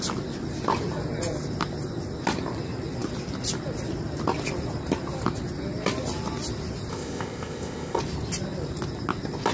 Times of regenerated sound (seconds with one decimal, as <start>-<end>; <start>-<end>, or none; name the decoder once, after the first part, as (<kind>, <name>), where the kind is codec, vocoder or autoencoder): 6.9-8.0 (codec, ZipCodec)